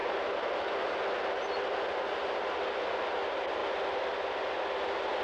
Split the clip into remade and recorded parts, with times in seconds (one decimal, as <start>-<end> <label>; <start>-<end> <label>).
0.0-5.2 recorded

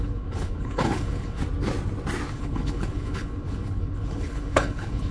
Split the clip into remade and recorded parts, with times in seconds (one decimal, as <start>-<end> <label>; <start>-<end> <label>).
0.0-1.4 remade; 1.4-2.3 recorded; 2.3-5.1 remade

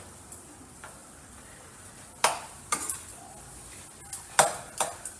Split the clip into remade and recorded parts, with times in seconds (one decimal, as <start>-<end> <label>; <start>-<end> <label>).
0.0-5.2 recorded

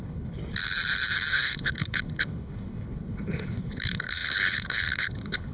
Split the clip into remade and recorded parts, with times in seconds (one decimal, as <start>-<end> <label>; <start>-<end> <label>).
0.0-0.4 remade; 0.4-1.3 recorded; 1.3-5.5 remade